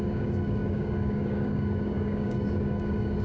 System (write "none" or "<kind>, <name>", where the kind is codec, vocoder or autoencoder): codec, DAC